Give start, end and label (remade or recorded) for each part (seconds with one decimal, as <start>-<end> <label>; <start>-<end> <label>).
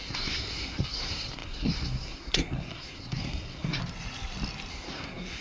0.0-3.8 remade; 3.8-4.7 recorded; 4.7-5.4 remade